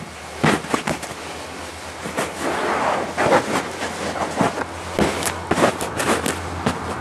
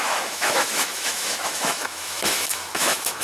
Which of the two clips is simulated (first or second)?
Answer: second